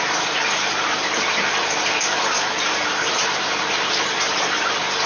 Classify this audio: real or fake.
fake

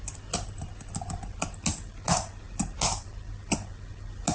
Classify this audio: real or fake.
real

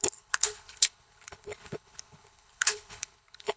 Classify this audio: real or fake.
fake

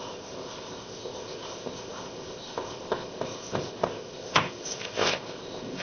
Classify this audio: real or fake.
fake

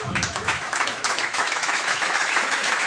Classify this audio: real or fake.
fake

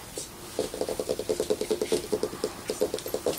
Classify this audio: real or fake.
real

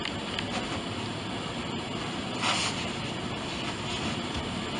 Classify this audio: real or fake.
real